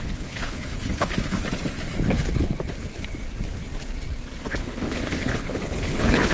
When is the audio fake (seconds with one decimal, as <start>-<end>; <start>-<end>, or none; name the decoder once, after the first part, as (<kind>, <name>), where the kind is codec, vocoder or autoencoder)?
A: 0.0-1.4 (codec, HILCodec); 4.4-6.3